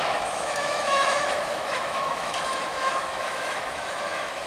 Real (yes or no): no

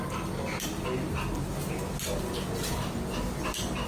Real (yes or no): yes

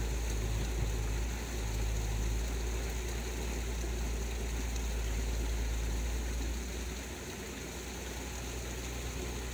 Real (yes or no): yes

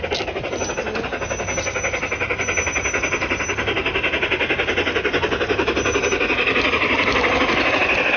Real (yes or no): yes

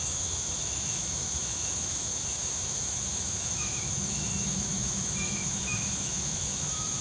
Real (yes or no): no